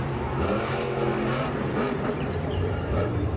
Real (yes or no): no